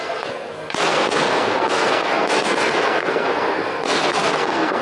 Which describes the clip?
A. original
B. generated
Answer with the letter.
B